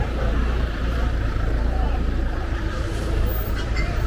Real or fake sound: fake